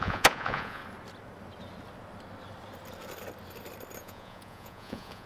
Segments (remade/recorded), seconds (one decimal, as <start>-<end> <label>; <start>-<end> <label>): 0.0-0.8 remade; 0.8-4.0 recorded; 4.0-5.3 remade